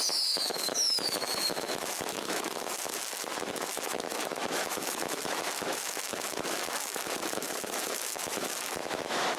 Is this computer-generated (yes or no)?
yes